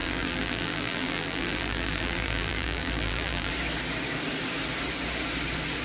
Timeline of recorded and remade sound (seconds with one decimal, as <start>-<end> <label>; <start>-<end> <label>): 0.0-3.5 remade; 3.5-5.8 recorded